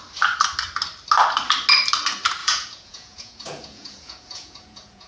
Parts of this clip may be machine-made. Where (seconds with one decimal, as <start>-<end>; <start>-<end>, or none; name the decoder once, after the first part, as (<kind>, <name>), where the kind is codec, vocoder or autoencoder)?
2.4-5.1 (vocoder, Vocos)

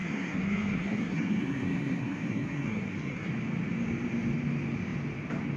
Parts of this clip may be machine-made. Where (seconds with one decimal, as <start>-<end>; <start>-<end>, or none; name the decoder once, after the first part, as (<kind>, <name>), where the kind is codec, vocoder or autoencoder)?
0.0-3.3 (codec, SNAC)

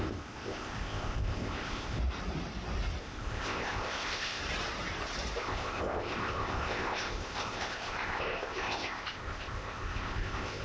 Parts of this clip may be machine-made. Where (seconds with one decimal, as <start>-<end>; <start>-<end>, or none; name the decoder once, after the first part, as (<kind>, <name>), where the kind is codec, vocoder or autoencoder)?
0.0-2.0 (codec, ZipCodec); 3.0-4.4; 5.4-10.6

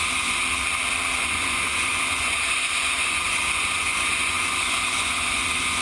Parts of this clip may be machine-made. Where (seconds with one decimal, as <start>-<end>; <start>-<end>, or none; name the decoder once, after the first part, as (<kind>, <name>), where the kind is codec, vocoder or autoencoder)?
0.0-0.4 (vocoder, Vocos); 1.2-5.8

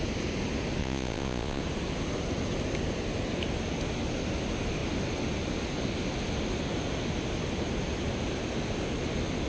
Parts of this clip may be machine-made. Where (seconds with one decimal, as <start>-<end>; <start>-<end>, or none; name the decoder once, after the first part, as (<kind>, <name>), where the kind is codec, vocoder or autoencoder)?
0.8-1.6 (vocoder, Vocos)